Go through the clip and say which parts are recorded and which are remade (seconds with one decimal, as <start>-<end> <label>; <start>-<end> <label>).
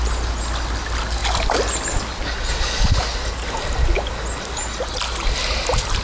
0.0-6.0 recorded